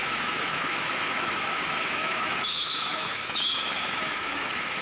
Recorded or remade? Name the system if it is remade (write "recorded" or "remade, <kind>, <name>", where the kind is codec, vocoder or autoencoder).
remade, autoencoder, DAC-VAE